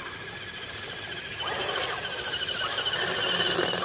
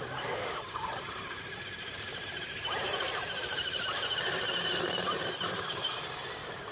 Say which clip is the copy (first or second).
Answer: second